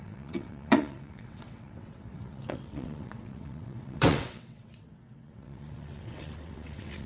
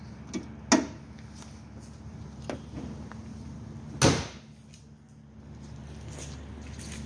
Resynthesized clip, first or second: first